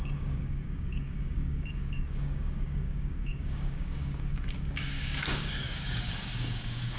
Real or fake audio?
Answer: fake